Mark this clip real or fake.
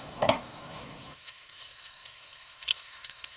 fake